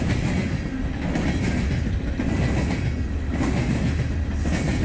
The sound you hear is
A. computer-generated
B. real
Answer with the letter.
B